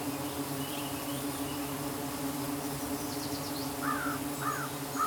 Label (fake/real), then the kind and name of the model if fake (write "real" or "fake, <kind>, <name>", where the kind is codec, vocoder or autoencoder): real